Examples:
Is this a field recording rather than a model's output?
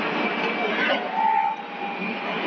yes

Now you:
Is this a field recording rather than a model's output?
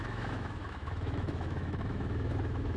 no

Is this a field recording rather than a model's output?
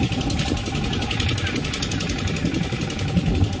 yes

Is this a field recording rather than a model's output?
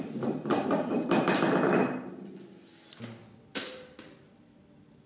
no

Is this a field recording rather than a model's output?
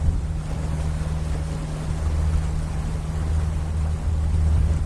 yes